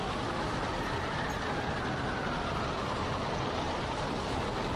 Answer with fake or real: real